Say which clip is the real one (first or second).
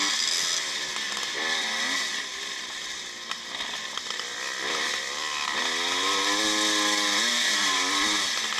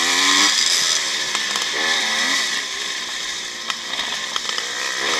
first